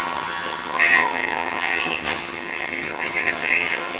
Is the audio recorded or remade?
remade